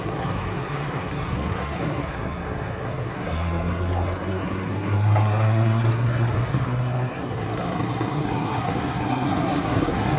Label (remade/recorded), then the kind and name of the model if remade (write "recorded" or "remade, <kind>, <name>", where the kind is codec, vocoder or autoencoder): remade, codec, SNAC